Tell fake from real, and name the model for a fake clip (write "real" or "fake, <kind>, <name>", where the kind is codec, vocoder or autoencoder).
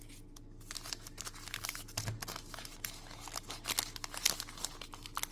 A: real